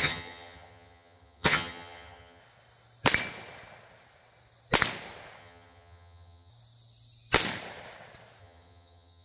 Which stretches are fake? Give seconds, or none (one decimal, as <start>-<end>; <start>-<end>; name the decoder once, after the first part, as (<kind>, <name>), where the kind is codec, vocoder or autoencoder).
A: 0.0-2.4 (vocoder, HiFi-GAN); 5.4-6.5; 8.4-9.2